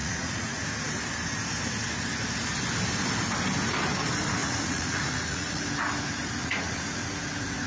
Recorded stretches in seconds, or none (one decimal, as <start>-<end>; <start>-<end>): 0.6-4.4; 5.6-6.4; 7.1-7.7